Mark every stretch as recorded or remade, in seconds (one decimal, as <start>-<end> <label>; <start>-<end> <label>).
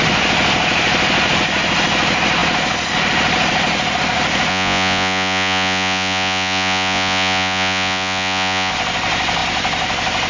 0.0-4.5 recorded; 4.5-8.7 remade; 8.7-10.3 recorded